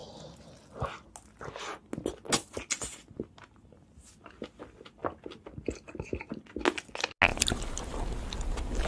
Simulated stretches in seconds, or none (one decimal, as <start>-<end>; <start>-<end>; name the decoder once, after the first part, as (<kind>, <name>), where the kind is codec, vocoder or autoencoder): none